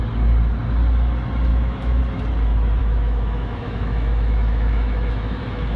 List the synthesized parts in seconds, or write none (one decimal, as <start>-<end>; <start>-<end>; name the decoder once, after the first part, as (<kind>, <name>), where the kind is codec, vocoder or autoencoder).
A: 1.5-2.0 (autoencoder, DAC-VAE); 2.8-5.8